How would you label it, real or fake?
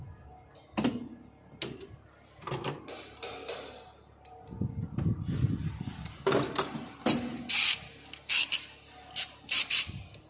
real